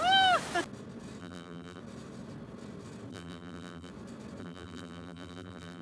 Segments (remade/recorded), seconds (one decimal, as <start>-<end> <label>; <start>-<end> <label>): 0.0-1.2 recorded; 1.2-1.8 remade; 1.8-3.1 recorded; 3.1-3.9 remade; 3.9-4.4 recorded; 4.4-5.8 remade